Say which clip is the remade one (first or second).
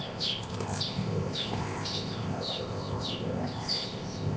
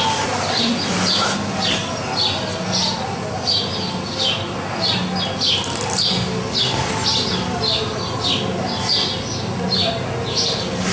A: first